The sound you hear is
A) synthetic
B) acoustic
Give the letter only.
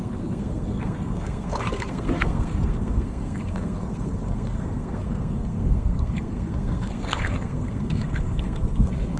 A